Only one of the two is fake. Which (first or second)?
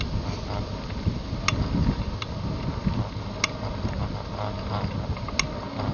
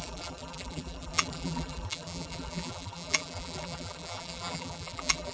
second